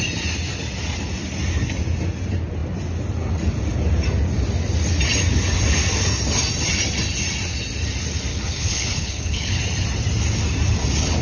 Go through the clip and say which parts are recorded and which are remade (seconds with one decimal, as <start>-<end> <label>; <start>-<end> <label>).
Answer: 0.0-8.3 recorded; 8.3-9.6 remade; 9.6-11.2 recorded